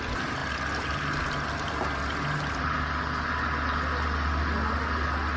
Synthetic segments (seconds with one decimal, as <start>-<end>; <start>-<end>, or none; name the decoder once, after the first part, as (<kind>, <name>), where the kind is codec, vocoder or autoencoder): none